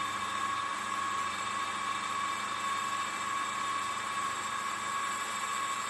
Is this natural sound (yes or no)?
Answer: no